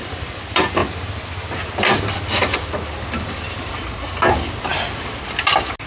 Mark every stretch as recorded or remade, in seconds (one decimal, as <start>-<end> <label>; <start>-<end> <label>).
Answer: 0.0-0.8 remade; 0.8-4.3 recorded; 4.3-4.7 remade; 4.7-5.9 recorded